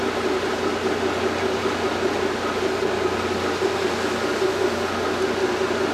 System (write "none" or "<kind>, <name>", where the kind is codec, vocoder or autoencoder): none